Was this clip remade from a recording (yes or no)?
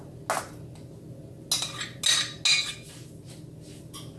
no